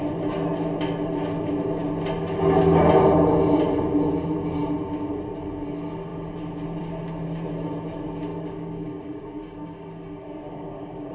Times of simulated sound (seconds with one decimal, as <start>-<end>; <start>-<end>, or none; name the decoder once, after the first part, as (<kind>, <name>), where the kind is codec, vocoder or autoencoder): 8.3-11.1 (codec, DAC)